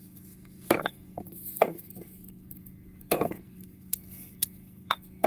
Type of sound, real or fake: fake